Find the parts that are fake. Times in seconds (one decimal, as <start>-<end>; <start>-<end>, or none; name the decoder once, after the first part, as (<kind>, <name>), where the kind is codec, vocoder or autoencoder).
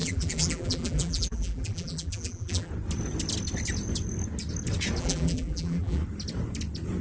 0.0-2.7 (vocoder, BigVGAN v2); 5.0-6.0